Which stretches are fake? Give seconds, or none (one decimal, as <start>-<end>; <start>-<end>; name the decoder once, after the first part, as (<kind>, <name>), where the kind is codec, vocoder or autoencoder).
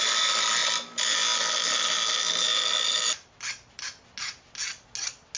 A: none